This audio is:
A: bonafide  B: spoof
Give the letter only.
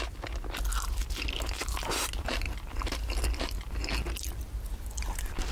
A